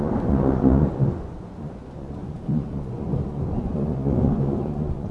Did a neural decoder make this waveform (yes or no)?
yes